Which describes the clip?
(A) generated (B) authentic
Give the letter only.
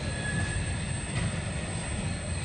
B